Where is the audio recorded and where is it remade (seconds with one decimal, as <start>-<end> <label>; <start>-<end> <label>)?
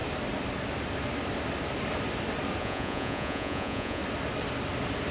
0.0-2.6 recorded; 2.6-4.0 remade; 4.0-5.1 recorded